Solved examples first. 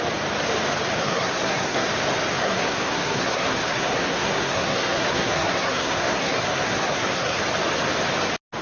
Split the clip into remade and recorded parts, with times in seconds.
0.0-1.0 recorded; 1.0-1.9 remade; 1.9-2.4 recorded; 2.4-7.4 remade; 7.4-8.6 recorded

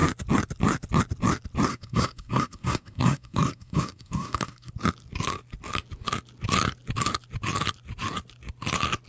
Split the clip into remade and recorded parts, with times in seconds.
0.0-1.7 recorded; 1.7-4.7 remade; 4.7-9.1 recorded

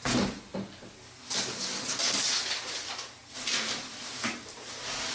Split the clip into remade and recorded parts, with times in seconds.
0.0-5.1 recorded

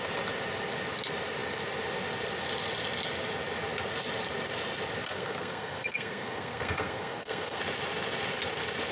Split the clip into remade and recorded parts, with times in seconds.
0.0-5.1 recorded; 5.1-7.6 remade; 7.6-8.9 recorded

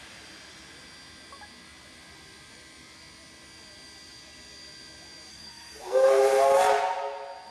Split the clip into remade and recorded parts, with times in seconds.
0.0-5.3 recorded; 5.3-6.2 remade; 6.2-7.5 recorded

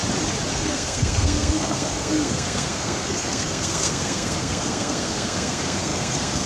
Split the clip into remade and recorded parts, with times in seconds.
0.0-0.5 recorded; 0.5-6.5 remade

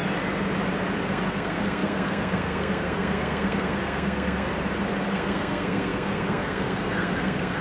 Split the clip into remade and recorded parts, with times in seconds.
0.0-1.1 recorded; 1.1-4.5 remade; 4.5-5.1 recorded; 5.1-7.6 remade

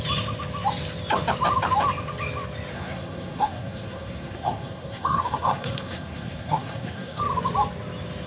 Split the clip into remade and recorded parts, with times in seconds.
0.0-2.7 recorded; 2.7-7.2 remade; 7.2-8.3 recorded